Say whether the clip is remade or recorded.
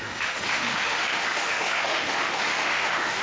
remade